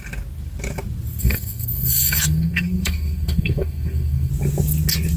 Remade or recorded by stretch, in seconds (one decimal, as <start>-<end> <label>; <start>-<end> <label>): 0.0-1.2 recorded; 1.2-4.3 remade; 4.3-5.2 recorded